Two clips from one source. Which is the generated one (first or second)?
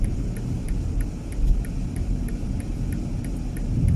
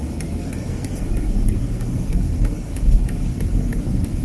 second